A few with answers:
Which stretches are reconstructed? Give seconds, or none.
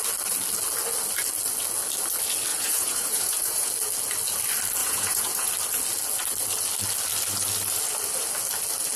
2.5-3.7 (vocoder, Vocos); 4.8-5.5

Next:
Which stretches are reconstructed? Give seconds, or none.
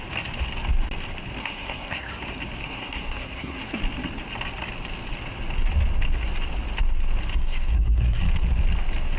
1.4-2.1 (codec, SNAC); 2.6-3.8; 7.3-8.2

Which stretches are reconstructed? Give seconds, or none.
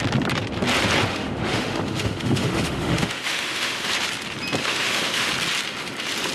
1.1-3.9 (autoencoder, DAC-VAE); 4.6-5.3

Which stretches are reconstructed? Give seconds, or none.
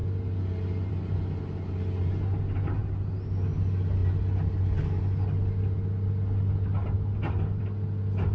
none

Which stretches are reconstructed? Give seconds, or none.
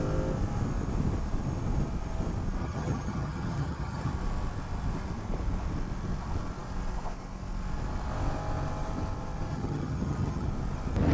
2.6-4.1 (vocoder, HiFi-GAN); 9.5-10.5